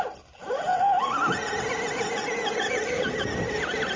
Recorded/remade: recorded